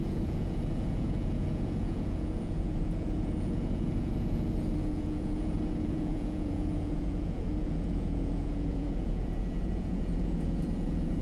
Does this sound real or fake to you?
fake